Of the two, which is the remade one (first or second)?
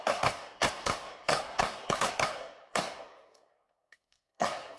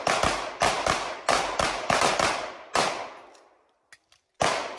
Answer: first